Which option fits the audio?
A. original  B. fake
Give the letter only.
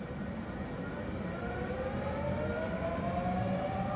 A